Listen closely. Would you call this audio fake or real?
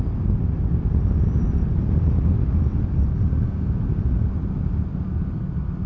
real